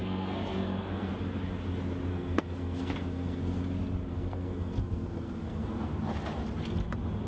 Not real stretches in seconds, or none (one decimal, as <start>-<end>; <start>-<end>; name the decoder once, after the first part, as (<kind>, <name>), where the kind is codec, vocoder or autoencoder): 0.0-1.1 (codec, SNAC); 2.1-3.6; 4.1-5.9